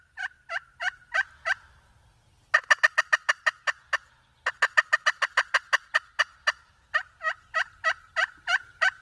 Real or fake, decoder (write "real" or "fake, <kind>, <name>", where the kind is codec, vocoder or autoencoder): real